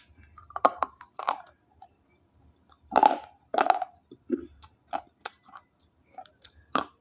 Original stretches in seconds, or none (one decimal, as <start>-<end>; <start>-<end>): 3.0-3.6